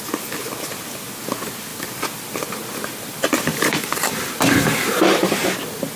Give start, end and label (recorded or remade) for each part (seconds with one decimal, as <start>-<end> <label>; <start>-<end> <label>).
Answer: 0.0-1.7 recorded; 1.7-5.3 remade; 5.3-6.0 recorded